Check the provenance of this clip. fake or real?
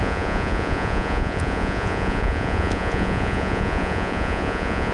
fake